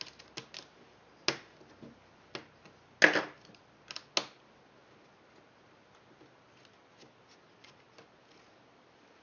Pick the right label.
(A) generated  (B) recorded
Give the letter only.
B